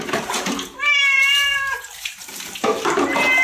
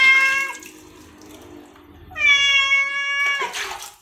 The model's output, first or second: first